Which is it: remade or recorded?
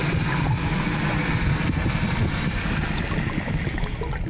recorded